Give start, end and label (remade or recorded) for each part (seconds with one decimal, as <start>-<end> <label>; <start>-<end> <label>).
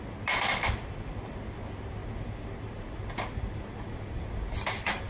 0.0-5.1 recorded